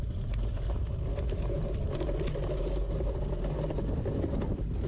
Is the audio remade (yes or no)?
no